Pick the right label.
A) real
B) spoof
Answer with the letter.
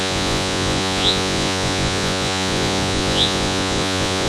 B